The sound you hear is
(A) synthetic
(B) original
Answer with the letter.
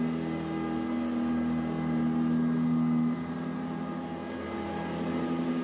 B